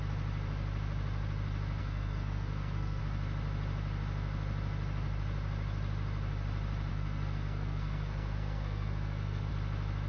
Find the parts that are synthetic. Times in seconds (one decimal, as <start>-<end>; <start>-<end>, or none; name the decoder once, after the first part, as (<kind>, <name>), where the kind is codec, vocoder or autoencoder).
1.8-3.0 (codec, SNAC); 6.9-9.5